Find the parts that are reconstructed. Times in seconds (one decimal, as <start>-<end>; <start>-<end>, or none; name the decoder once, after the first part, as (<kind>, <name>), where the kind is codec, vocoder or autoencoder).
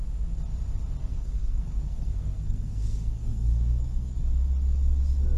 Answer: 1.0-4.2 (codec, SNAC)